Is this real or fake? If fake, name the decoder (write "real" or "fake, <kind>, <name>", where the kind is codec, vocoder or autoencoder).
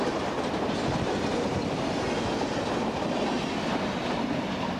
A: real